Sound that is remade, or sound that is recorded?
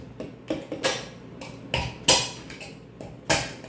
recorded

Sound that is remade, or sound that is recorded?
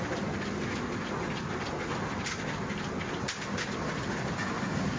recorded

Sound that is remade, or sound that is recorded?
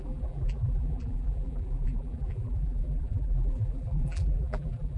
remade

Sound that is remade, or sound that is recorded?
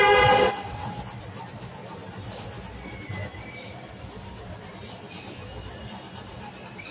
recorded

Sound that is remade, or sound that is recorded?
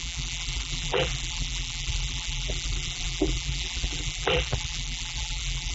remade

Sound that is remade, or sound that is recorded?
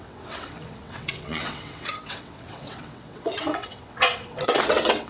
remade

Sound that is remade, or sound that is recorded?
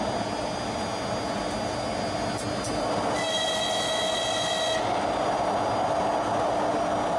recorded